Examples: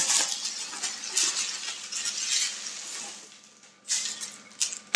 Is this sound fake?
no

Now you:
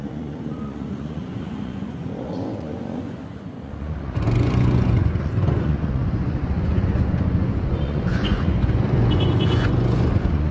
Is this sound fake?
yes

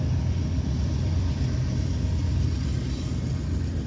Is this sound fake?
no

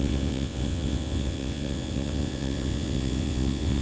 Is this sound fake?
yes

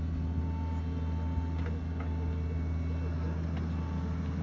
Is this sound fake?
no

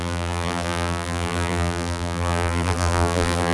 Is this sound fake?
yes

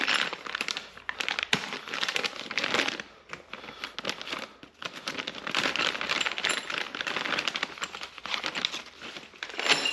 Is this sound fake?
no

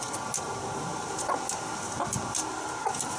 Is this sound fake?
no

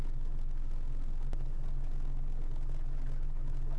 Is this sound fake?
no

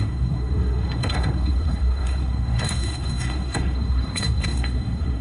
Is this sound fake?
yes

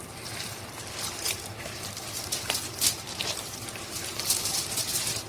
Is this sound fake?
yes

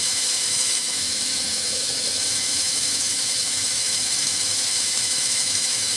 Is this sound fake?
yes